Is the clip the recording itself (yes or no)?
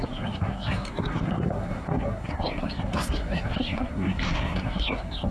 no